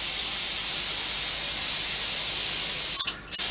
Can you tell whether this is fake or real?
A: real